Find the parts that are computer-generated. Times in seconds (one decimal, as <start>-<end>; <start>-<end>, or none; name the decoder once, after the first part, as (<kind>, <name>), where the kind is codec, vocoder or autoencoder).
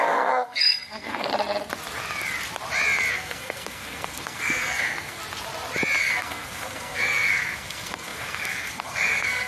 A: 0.0-1.3 (codec, SNAC); 3.1-5.2; 6.0-9.5